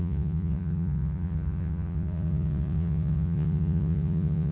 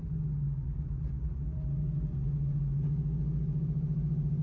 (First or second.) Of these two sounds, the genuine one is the second